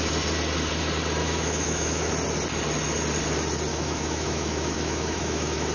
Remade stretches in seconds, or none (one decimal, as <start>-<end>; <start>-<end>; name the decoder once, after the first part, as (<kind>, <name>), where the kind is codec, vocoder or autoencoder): 1.2-2.1 (autoencoder, DAC-VAE); 3.7-5.7